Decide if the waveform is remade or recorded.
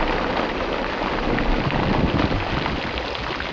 recorded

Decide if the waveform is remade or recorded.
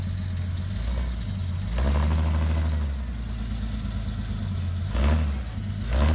recorded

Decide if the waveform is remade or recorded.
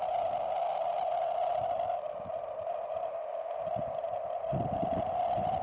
recorded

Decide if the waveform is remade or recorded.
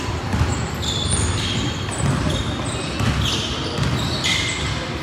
recorded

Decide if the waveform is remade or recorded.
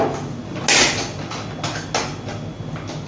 recorded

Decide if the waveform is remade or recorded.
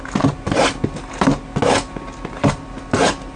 recorded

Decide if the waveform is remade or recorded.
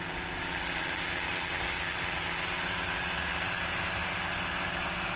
recorded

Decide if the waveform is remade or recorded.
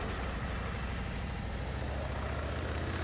recorded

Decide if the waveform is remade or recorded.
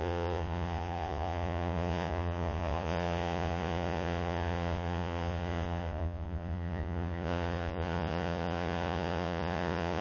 remade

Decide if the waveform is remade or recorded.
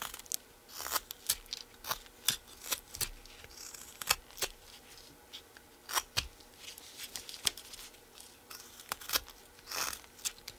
recorded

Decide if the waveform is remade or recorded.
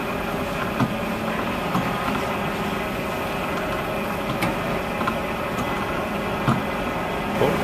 recorded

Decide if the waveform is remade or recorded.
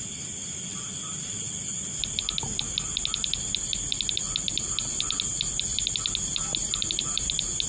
recorded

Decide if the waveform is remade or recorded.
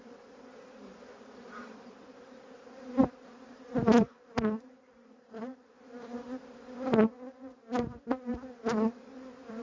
remade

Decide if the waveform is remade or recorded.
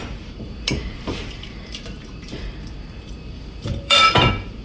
remade